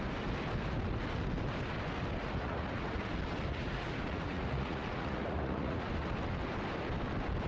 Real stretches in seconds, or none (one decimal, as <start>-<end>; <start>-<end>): 0.0-2.2; 3.1-3.5; 5.9-7.5